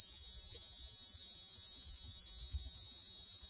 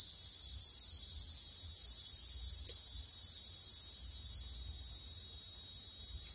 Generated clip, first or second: first